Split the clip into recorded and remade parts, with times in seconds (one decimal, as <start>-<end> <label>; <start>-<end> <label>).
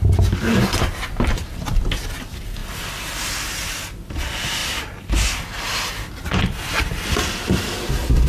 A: 0.0-6.4 recorded; 6.4-7.1 remade; 7.1-8.3 recorded